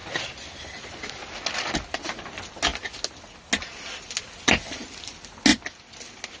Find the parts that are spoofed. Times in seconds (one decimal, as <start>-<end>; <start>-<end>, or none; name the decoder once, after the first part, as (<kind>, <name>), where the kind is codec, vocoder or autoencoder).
none